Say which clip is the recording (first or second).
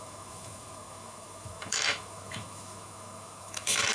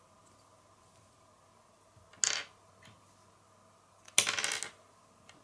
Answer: second